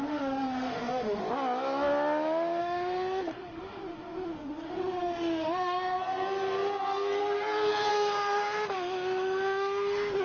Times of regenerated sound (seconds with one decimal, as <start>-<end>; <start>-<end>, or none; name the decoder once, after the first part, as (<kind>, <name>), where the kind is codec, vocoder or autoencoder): 0.0-1.2 (autoencoder, DAC-VAE); 2.6-6.0; 7.9-10.2